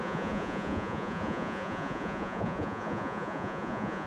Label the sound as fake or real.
fake